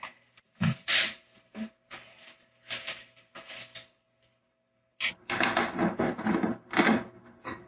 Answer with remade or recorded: recorded